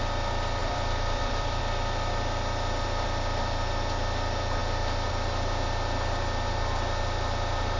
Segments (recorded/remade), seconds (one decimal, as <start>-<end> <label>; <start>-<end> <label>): 0.0-0.6 recorded; 0.6-1.6 remade; 1.6-4.6 recorded; 4.6-5.1 remade; 5.1-7.8 recorded